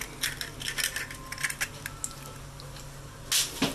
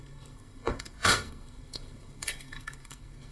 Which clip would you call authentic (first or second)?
first